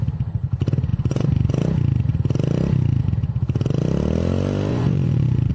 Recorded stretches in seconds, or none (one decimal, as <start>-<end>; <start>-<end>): 0.0-0.9; 1.5-4.7

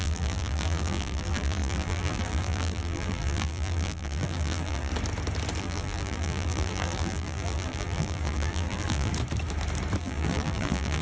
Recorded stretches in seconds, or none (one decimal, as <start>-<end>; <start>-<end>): 4.9-5.6; 9.1-10.0

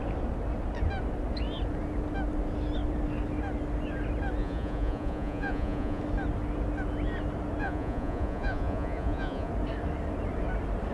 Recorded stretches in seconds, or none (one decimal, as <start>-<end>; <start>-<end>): 0.0-4.4; 6.0-7.6; 9.5-10.9

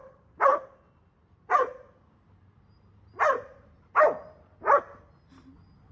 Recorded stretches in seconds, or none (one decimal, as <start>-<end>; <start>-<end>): 0.0-5.9